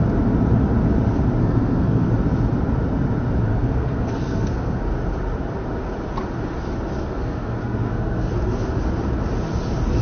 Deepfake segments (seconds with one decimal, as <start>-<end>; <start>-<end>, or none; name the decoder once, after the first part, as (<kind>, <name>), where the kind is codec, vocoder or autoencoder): 1.4-2.1 (codec, SNAC); 3.5-4.8; 7.0-8.3